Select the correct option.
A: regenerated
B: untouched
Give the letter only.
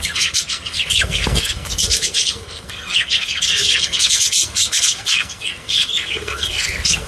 A